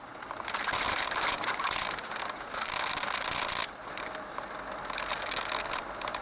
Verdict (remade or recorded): remade